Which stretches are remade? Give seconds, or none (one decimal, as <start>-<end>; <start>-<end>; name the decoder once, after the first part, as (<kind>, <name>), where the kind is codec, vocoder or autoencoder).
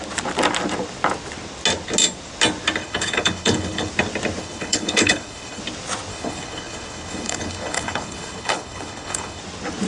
2.8-3.9 (codec, HILCodec); 4.4-5.6; 6.1-9.4